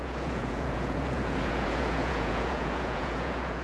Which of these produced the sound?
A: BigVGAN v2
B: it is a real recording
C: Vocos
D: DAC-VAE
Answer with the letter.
C